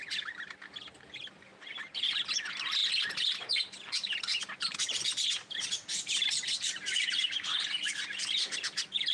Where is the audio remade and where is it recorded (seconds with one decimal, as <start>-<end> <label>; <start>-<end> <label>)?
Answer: 0.0-9.1 recorded

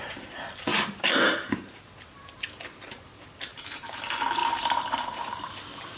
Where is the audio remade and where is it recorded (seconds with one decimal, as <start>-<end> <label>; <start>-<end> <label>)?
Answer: 0.0-0.7 recorded; 0.7-1.9 remade; 1.9-3.5 recorded; 3.5-4.0 remade; 4.0-4.4 recorded; 4.4-5.5 remade; 5.5-6.0 recorded

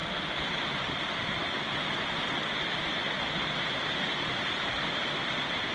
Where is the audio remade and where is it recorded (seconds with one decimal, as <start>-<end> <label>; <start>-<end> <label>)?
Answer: 0.0-3.4 recorded; 3.4-5.7 remade

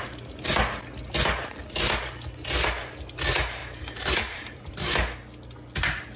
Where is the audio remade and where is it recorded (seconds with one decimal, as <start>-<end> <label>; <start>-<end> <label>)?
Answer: 0.0-3.6 recorded; 3.6-4.7 remade; 4.7-6.2 recorded

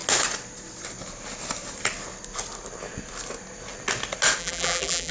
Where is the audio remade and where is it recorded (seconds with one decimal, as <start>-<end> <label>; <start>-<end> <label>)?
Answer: 0.0-4.4 recorded; 4.4-5.1 remade

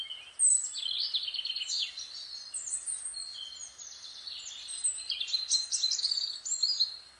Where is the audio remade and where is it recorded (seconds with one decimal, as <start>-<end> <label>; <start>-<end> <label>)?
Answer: 0.0-7.2 recorded